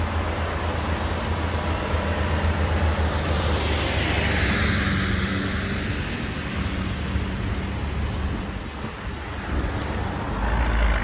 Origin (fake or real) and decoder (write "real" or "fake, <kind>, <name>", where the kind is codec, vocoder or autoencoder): real